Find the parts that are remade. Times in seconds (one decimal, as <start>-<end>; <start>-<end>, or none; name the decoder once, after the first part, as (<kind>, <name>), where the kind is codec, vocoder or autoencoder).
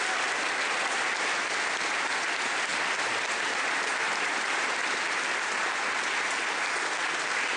none